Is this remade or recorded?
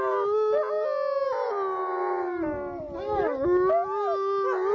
recorded